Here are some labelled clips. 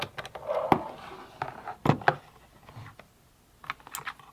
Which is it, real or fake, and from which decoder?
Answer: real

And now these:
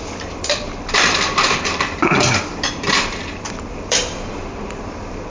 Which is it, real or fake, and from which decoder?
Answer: fake, vocoder, BigVGAN v2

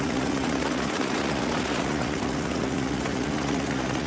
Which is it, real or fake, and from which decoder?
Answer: fake, vocoder, Vocos